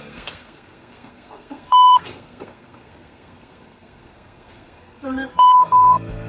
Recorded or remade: remade